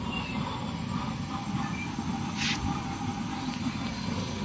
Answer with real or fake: real